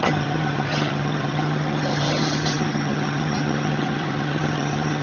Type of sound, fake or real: fake